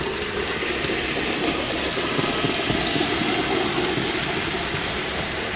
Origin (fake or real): real